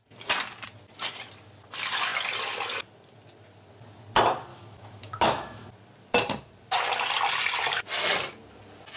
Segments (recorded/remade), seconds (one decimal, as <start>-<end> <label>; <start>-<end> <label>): 0.0-4.5 recorded; 4.5-5.7 remade; 5.7-9.0 recorded